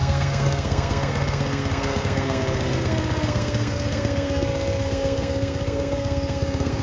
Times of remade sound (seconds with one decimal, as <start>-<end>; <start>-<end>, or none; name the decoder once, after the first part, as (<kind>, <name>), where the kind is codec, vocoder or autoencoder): 0.0-6.8 (codec, SNAC)